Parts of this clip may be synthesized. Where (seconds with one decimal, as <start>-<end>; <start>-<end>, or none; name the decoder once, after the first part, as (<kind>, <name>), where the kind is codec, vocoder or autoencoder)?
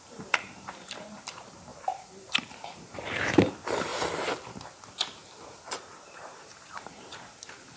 0.0-3.9 (vocoder, BigVGAN v2); 5.8-7.8